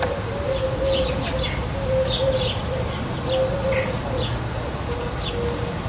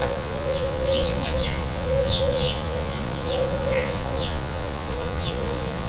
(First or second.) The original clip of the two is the first